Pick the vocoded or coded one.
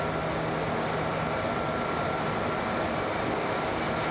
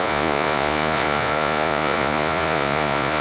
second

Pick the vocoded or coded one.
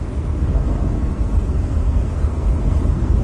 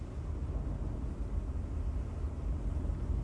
first